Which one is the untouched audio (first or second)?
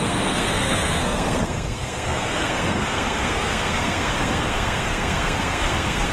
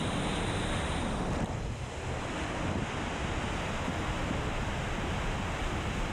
second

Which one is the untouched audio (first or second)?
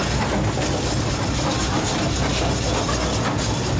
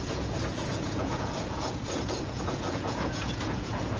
first